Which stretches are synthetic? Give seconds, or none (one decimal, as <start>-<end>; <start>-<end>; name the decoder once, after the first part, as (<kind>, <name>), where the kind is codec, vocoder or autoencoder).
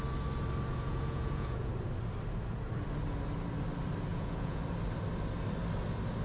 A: 0.7-1.7 (vocoder, Vocos); 4.1-4.6